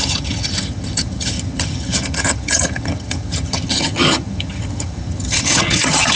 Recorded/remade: remade